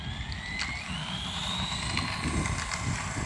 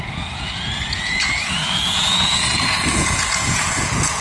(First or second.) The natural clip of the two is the first